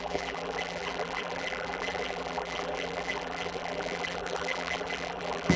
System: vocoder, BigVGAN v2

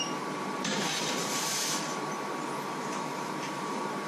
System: vocoder, BigVGAN v2